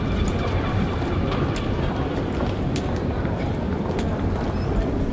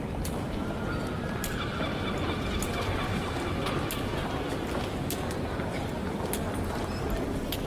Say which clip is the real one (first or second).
second